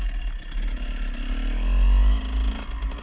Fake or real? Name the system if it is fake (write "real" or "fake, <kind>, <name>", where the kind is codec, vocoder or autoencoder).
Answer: real